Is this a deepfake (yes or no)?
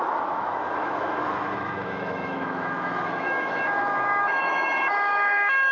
yes